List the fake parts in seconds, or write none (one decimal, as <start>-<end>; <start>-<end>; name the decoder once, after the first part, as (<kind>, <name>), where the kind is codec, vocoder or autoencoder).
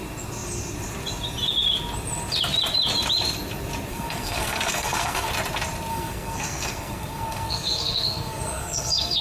3.9-5.3 (codec, SNAC); 5.9-9.2